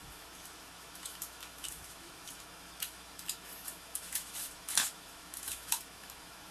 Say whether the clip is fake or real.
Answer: fake